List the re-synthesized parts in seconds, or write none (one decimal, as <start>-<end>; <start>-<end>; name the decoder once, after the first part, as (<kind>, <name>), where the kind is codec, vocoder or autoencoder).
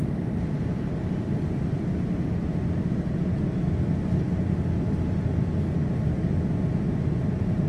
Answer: none